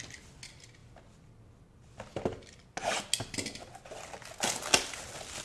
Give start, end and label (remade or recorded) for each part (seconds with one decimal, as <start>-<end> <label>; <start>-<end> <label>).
0.0-5.4 recorded